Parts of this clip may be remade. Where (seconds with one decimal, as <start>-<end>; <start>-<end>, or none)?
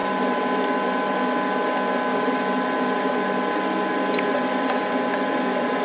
none